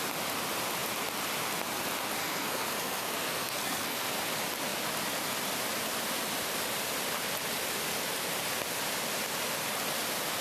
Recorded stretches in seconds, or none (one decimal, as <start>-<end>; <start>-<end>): 0.0-2.2; 4.1-10.4